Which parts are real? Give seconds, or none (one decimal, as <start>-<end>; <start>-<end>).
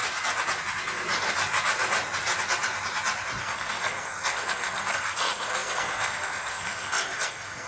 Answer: 0.0-3.4